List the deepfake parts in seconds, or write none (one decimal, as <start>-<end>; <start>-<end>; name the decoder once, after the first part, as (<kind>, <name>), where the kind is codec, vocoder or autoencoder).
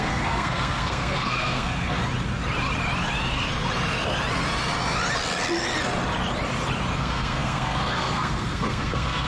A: 0.0-2.0 (codec, SNAC); 7.0-9.3